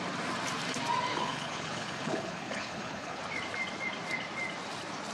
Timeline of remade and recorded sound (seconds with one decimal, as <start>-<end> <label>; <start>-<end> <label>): 0.0-1.1 recorded; 1.1-3.2 remade; 3.2-5.1 recorded